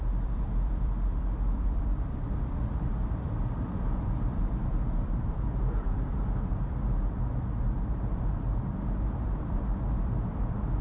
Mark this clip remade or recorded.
remade